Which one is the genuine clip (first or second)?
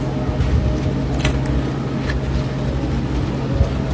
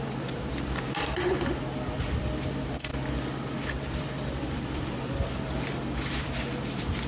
first